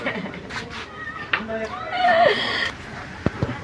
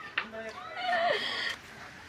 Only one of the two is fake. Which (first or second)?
first